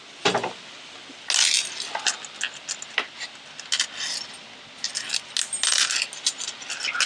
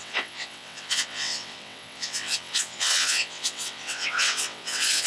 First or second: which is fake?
second